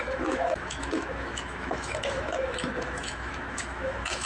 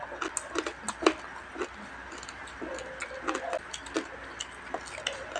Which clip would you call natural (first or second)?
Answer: second